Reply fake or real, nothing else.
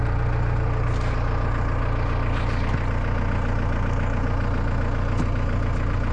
real